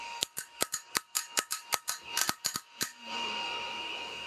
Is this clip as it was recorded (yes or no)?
no